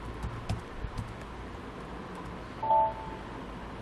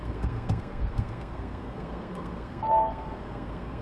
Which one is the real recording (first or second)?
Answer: first